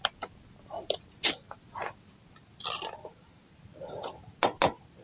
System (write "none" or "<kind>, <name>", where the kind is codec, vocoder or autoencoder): none